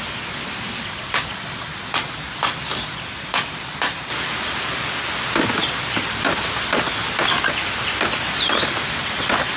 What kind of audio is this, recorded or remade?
recorded